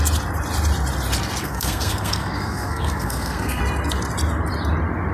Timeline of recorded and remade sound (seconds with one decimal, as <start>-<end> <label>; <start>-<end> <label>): 0.0-1.4 recorded; 1.4-3.6 remade; 3.6-5.1 recorded